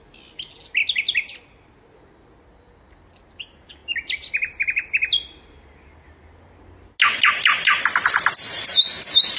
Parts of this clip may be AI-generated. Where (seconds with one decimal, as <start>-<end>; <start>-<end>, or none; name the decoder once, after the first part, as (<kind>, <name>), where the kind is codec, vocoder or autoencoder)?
none